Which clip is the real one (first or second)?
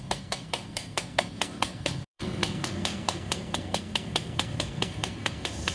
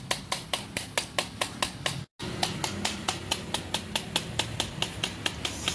second